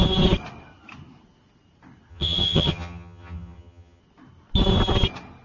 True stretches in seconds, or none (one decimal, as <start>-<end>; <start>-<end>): 0.0-2.1; 4.0-5.4